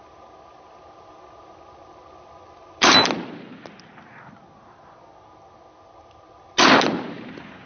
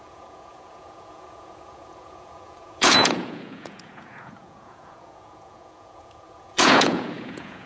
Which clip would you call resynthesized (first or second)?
second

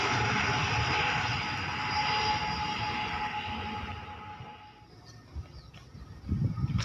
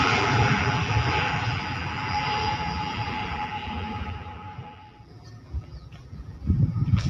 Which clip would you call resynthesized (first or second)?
second